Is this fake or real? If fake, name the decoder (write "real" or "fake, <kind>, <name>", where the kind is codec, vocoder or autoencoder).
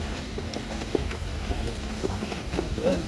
fake, codec, DAC